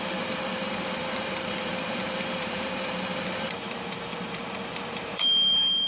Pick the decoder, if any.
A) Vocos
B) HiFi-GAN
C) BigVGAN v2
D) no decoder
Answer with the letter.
C